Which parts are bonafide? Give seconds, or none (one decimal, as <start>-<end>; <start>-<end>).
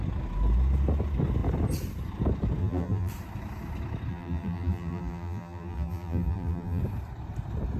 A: 0.0-2.6; 3.1-4.1; 6.8-7.8